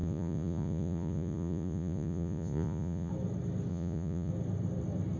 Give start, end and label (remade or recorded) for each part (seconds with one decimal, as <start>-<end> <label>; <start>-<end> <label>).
0.0-3.1 remade; 3.1-3.7 recorded; 3.7-4.3 remade; 4.3-5.2 recorded